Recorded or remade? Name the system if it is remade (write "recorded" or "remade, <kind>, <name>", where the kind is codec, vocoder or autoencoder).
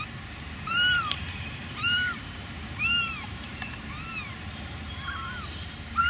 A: remade, vocoder, BigVGAN v2